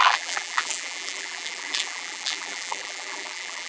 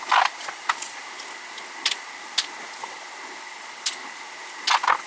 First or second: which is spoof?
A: first